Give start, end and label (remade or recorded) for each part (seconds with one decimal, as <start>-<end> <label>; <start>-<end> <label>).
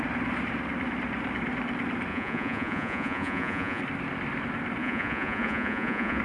0.0-2.1 recorded; 2.1-3.8 remade; 3.8-4.8 recorded; 4.8-6.2 remade